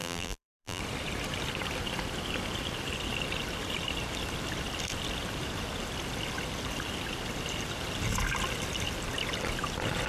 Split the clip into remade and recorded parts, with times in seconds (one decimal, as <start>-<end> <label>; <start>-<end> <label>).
0.0-0.8 remade; 0.8-10.1 recorded